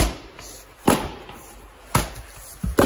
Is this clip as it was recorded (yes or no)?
yes